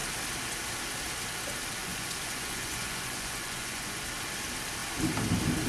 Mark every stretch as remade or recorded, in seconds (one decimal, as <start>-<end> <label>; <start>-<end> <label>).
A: 0.0-1.8 recorded; 1.8-4.0 remade; 4.0-5.7 recorded